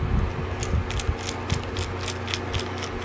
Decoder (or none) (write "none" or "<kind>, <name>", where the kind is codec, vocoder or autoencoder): none